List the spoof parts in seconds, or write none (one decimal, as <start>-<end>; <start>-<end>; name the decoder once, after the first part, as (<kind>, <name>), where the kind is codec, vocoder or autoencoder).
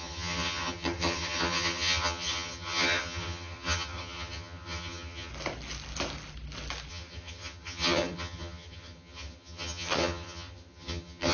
0.0-5.3 (vocoder, HiFi-GAN); 6.9-11.3